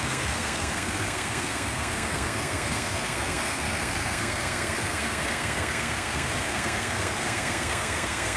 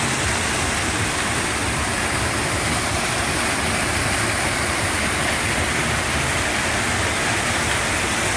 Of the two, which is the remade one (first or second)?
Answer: first